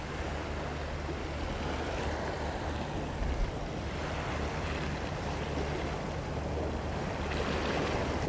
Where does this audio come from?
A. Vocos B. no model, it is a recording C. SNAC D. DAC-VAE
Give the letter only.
B